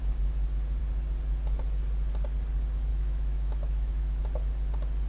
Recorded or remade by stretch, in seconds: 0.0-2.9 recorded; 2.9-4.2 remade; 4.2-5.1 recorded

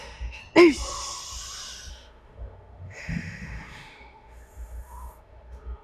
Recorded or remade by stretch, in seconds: 0.0-0.4 remade; 0.4-1.9 recorded; 1.9-5.8 remade

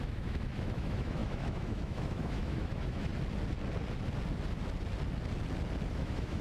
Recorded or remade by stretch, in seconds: 0.0-3.1 remade; 3.1-5.9 recorded; 5.9-6.4 remade